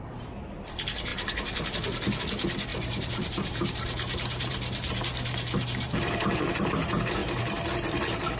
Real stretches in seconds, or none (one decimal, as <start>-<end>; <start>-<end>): 0.0-2.7; 6.7-7.2